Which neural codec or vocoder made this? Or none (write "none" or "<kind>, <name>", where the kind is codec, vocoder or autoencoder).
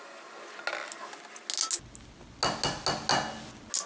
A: none